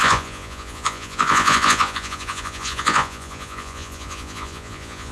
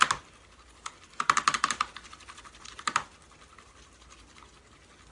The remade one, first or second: first